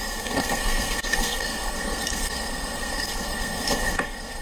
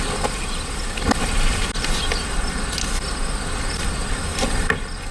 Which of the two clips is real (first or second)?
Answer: second